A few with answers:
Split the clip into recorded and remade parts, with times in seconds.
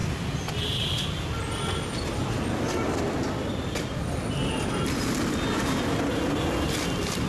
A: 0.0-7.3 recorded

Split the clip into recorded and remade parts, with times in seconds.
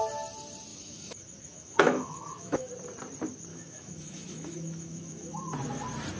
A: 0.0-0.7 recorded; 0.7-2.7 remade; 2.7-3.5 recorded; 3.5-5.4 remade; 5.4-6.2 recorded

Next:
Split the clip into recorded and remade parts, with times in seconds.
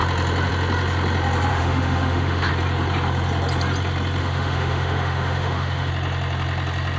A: 0.0-1.5 recorded; 1.5-2.5 remade; 2.5-4.2 recorded; 4.2-5.9 remade; 5.9-7.0 recorded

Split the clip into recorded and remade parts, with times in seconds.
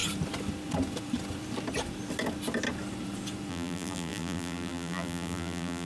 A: 0.0-3.5 recorded; 3.5-5.8 remade